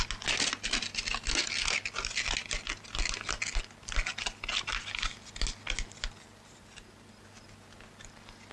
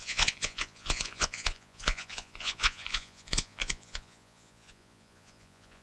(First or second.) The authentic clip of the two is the first